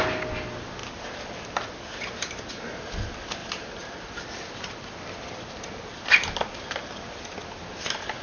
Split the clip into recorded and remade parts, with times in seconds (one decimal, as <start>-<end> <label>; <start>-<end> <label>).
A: 0.0-8.2 recorded

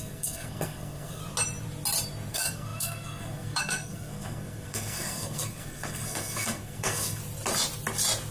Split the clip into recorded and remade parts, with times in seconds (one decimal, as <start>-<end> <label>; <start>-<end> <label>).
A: 0.0-1.2 remade; 1.2-2.3 recorded; 2.3-7.2 remade; 7.2-8.3 recorded

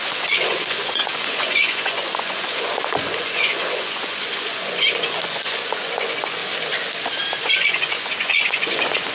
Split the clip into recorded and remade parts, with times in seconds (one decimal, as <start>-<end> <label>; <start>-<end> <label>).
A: 0.0-6.4 remade; 6.4-7.4 recorded; 7.4-9.1 remade

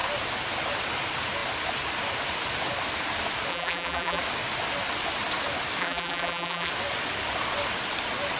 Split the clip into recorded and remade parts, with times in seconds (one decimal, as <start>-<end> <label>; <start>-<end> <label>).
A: 0.0-3.5 recorded; 3.5-4.2 remade; 4.2-5.8 recorded; 5.8-6.7 remade; 6.7-8.4 recorded